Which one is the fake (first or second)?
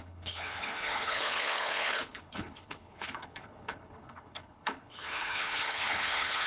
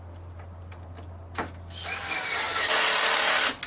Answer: first